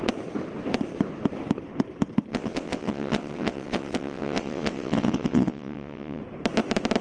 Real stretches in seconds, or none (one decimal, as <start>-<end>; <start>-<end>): 0.0-2.3; 6.2-7.0